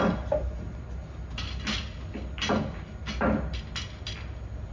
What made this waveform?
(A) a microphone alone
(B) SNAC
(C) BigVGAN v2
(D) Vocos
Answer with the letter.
A